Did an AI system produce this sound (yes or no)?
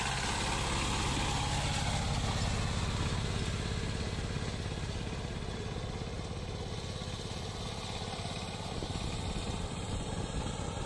no